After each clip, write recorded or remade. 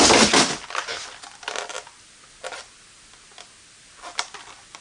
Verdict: recorded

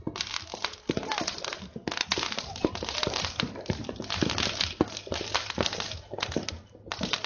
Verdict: recorded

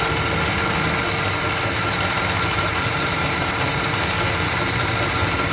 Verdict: recorded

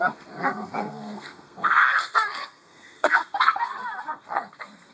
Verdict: remade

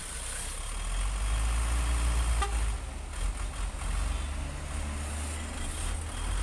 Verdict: recorded